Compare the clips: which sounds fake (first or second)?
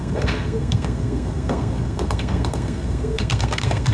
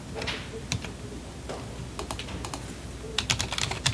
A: first